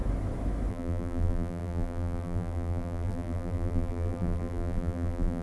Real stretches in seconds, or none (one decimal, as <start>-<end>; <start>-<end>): 0.0-0.7